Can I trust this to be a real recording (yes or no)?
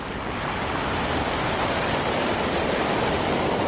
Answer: no